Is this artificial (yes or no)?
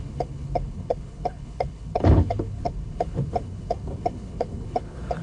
yes